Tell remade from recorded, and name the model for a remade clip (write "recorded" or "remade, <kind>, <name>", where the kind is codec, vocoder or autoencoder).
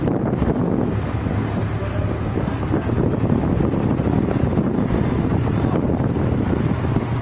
recorded